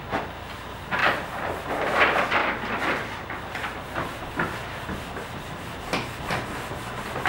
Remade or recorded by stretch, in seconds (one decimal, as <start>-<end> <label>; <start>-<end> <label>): 0.0-7.3 recorded